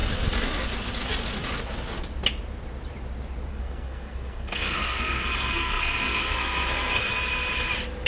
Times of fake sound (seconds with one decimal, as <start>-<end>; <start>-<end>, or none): 3.5-7.1

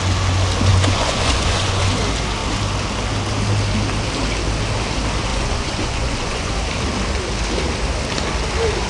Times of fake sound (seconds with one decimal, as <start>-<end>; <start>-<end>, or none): 0.7-1.9; 5.3-6.5